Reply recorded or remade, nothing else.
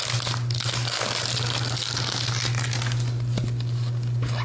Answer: recorded